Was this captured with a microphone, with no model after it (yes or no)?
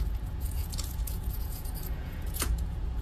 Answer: no